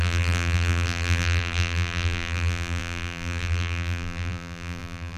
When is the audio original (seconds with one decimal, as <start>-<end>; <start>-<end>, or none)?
none

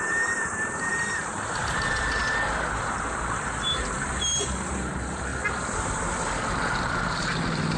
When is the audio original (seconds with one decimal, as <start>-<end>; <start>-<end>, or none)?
2.2-2.8; 5.3-6.8